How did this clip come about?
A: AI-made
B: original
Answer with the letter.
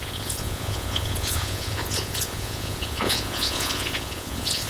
A